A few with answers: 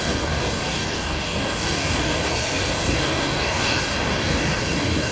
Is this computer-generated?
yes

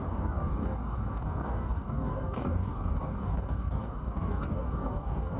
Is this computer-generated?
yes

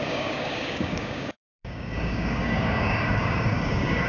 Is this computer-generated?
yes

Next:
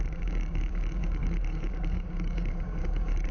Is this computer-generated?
yes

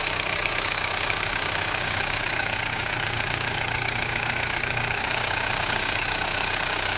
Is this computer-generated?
yes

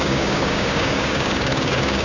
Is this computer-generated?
yes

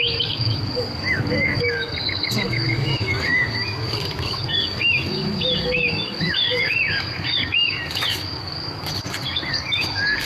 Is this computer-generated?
yes